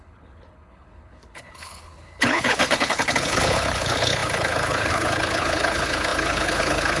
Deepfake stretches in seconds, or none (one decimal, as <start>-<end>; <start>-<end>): 0.0-7.0